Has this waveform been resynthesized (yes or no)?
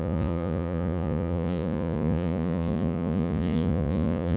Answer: yes